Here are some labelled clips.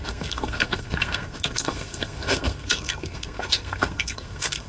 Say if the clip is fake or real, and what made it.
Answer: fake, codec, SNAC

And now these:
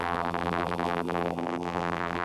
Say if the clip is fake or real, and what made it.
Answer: fake, vocoder, BigVGAN v2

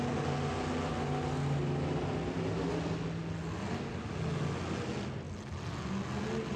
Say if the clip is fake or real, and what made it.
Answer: real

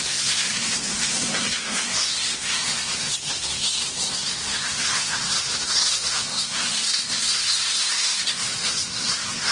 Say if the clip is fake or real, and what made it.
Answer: fake, codec, SNAC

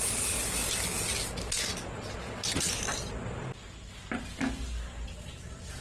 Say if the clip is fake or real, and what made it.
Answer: real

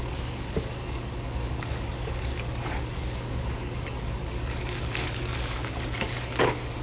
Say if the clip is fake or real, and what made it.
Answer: fake, codec, DAC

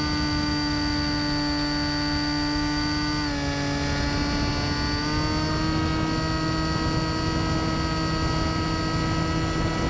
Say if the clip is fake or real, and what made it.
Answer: real